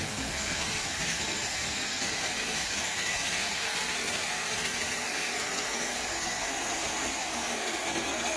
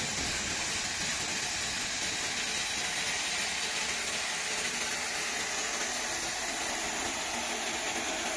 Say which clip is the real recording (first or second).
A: second